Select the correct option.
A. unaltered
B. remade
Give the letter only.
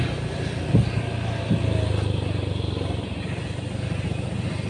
A